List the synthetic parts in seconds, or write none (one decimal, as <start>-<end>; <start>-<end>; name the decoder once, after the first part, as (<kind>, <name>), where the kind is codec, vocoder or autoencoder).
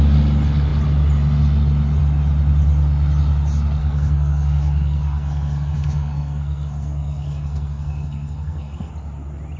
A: 3.8-8.9 (codec, SNAC)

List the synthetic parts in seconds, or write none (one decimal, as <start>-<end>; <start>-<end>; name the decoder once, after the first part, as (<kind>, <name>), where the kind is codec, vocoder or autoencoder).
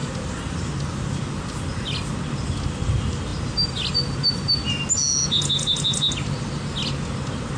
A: none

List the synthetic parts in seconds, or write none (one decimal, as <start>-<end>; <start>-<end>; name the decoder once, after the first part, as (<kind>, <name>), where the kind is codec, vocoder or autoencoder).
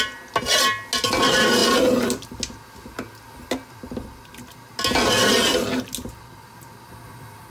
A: none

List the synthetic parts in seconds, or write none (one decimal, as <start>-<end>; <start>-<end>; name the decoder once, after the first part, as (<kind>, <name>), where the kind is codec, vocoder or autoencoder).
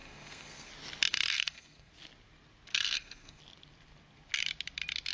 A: 0.0-0.7 (codec, SNAC); 1.1-1.9; 2.7-3.4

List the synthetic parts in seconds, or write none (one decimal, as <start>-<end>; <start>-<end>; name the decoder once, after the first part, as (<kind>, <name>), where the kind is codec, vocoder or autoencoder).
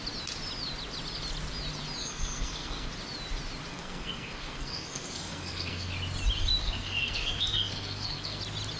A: 2.0-2.9 (codec, SNAC); 3.7-5.9; 6.6-8.4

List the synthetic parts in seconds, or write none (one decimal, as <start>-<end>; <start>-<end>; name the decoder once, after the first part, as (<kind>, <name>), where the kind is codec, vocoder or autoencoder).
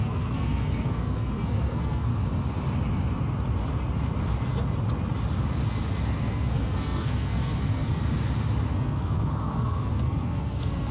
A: 0.0-2.1 (codec, SNAC); 6.2-8.0; 8.7-10.9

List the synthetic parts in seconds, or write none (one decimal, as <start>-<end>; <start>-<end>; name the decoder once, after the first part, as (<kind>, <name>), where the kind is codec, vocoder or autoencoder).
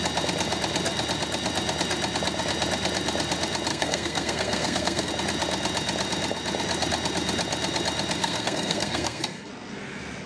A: 3.7-5.1 (codec, SNAC); 8.2-9.5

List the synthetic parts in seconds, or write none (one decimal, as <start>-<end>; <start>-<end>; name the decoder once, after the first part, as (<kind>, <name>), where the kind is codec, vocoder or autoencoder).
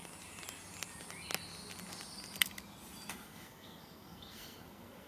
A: 3.1-5.1 (codec, SNAC)